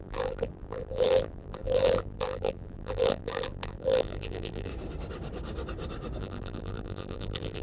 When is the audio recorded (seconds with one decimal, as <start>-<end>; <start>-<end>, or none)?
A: 4.7-6.2